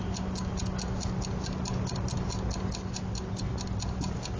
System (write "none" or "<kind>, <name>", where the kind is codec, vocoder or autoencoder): none